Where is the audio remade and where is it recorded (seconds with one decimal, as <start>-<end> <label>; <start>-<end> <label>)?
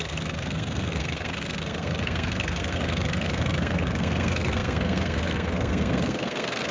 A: 0.0-6.7 remade